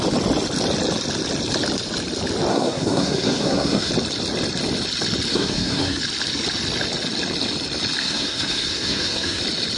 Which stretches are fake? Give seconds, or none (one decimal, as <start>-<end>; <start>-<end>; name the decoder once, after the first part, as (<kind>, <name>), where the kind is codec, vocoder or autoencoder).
2.5-3.9 (codec, SNAC); 5.3-6.0; 8.0-9.4